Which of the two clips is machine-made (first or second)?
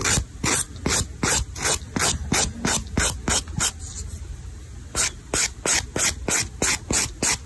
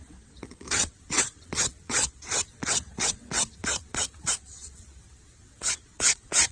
second